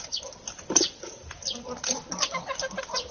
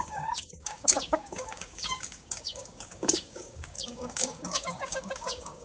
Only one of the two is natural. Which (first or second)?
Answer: first